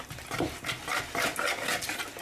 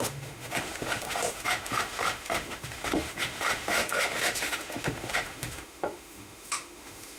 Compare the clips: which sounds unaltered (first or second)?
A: first